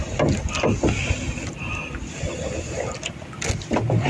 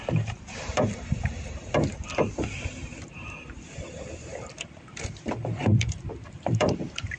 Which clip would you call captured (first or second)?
first